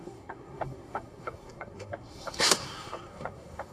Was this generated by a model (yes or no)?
yes